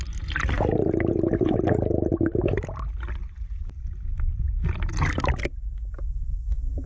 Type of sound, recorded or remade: recorded